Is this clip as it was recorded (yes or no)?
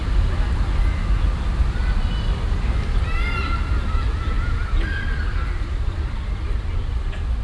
yes